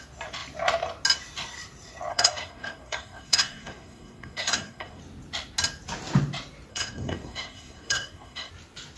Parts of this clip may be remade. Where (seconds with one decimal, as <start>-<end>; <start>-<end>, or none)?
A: 2.1-5.0; 6.7-8.5